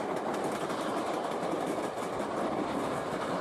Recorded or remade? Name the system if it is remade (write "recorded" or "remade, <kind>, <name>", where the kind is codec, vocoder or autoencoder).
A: recorded